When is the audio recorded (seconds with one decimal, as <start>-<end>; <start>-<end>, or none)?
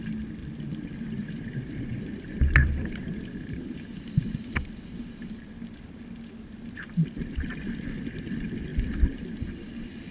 0.0-0.4; 5.4-8.7; 9.4-10.1